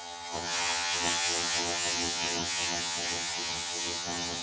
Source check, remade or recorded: remade